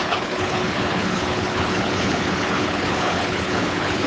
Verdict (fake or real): fake